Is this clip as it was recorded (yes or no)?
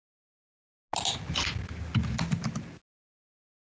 yes